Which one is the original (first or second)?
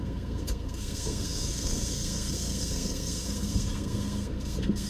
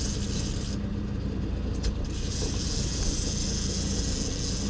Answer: second